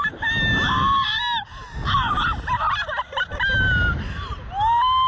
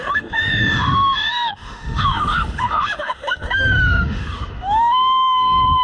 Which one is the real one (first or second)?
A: first